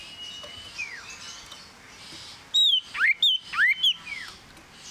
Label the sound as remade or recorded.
recorded